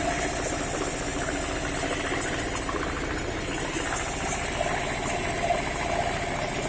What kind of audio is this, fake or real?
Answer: real